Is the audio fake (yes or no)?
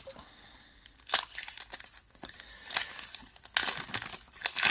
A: no